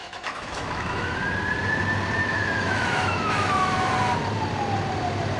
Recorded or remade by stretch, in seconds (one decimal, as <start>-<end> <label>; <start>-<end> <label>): 0.0-1.1 remade; 1.1-2.2 recorded; 2.2-3.9 remade; 3.9-5.4 recorded